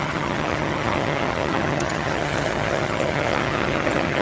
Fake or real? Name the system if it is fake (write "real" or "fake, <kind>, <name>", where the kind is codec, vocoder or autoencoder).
fake, vocoder, HiFi-GAN